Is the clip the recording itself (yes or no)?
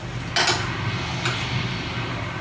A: yes